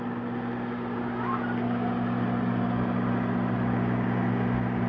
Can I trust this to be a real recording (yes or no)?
yes